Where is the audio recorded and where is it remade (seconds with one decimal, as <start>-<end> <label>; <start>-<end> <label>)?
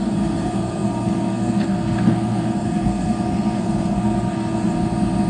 0.0-4.7 remade; 4.7-5.3 recorded